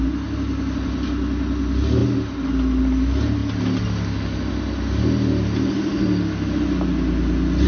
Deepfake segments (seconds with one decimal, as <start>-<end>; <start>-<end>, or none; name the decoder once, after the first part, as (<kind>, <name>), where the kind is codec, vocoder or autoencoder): none